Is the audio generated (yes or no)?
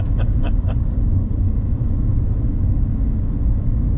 yes